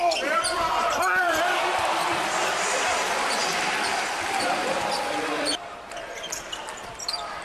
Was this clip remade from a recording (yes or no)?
yes